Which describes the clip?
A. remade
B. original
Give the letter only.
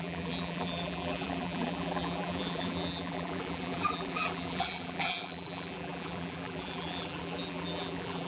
A